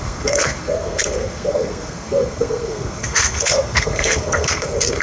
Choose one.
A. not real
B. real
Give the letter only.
A